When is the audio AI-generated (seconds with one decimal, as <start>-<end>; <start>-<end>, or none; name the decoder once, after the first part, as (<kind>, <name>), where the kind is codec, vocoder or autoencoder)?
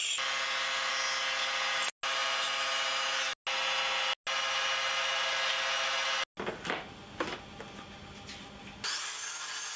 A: none